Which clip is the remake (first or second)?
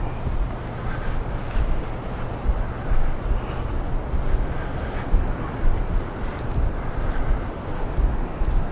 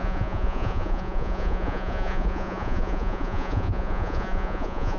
second